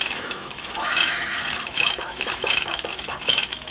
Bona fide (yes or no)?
no